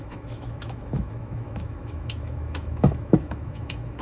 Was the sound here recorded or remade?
remade